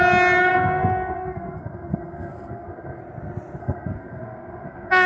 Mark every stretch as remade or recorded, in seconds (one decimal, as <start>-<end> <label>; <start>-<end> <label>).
0.0-0.5 recorded; 0.5-3.0 remade; 3.0-3.6 recorded; 3.6-5.1 remade

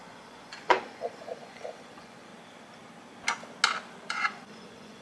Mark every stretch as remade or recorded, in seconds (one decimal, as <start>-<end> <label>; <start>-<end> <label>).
0.0-2.3 remade; 2.3-4.1 recorded; 4.1-5.0 remade

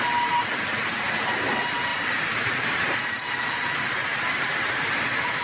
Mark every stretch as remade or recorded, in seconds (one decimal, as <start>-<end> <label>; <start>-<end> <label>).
0.0-4.1 recorded; 4.1-5.4 remade

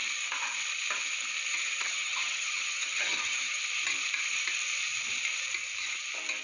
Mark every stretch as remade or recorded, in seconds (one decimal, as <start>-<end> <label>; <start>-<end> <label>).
0.0-1.5 recorded; 1.5-3.6 remade; 3.6-6.4 recorded

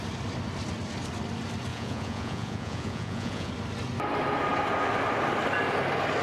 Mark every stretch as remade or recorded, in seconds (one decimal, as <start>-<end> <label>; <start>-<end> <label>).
0.0-1.7 recorded; 1.7-3.5 remade; 3.5-6.2 recorded

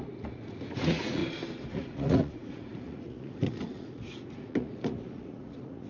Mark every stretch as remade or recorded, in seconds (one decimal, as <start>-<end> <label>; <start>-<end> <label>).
0.0-1.2 remade; 1.2-1.7 recorded; 1.7-5.9 remade